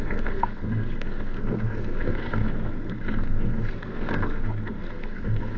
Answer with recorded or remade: remade